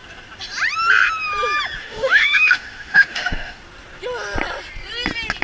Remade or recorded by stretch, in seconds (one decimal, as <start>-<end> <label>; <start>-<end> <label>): 0.0-1.8 recorded; 1.8-3.6 remade; 3.6-5.4 recorded